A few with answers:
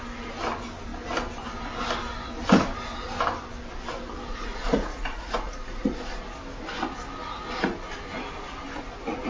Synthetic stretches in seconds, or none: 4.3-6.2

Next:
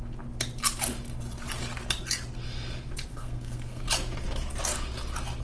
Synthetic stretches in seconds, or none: 3.1-3.8

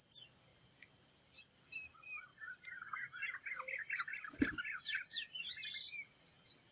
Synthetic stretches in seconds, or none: none

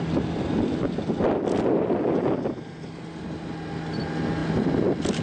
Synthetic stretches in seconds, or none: none

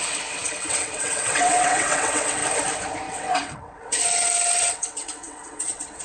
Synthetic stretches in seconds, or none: 0.0-2.4; 3.1-4.0; 4.6-6.0

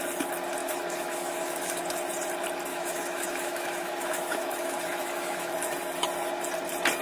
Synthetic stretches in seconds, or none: 0.6-1.8; 2.7-5.5

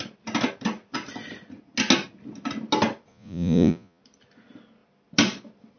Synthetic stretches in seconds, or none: 3.1-4.0